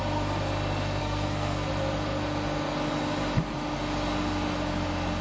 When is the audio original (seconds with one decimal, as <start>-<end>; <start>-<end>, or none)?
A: 0.0-1.0; 1.7-5.2